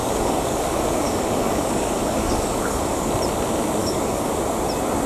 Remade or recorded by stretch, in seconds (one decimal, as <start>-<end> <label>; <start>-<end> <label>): 0.0-3.1 remade; 3.1-3.8 recorded; 3.8-4.3 remade; 4.3-5.1 recorded